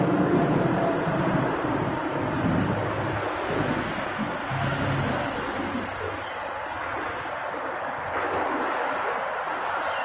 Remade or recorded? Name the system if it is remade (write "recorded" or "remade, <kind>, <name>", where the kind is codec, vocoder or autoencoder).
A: recorded